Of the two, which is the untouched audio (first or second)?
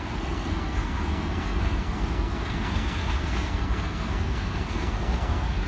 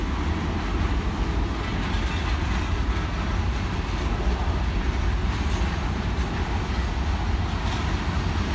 second